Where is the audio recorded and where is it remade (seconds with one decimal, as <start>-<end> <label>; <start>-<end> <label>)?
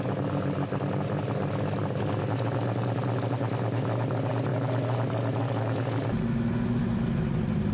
0.0-7.7 recorded